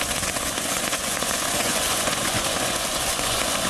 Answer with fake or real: fake